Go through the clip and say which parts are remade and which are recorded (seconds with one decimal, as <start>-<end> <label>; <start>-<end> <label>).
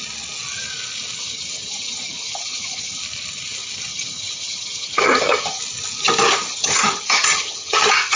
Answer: 0.0-1.2 recorded; 1.2-3.0 remade; 3.0-3.9 recorded; 3.9-5.6 remade; 5.6-6.5 recorded; 6.5-8.2 remade